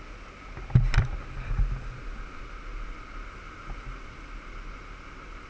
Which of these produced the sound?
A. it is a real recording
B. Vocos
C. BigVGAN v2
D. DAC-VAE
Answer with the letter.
A